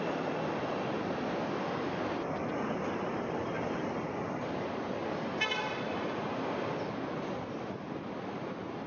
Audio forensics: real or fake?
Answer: real